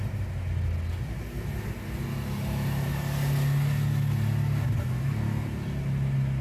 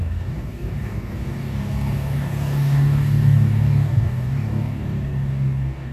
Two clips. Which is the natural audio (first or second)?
first